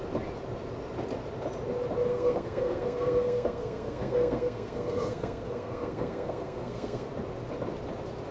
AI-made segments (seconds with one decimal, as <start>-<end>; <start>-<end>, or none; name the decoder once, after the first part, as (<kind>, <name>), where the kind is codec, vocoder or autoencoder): 2.1-7.1 (codec, SNAC)